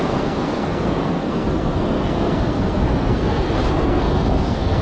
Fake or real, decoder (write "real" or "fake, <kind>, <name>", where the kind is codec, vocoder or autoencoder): fake, codec, SNAC